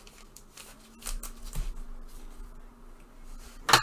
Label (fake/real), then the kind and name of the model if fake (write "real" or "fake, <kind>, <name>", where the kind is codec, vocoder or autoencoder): real